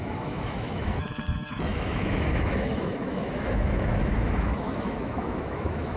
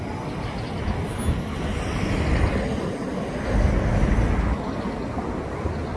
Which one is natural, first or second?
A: second